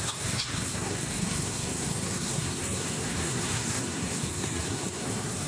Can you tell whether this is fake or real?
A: fake